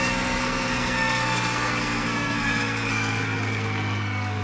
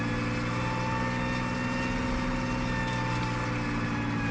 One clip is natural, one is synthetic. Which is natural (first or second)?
second